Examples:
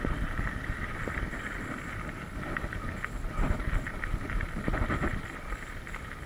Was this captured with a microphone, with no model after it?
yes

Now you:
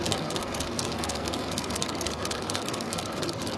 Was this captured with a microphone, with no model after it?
no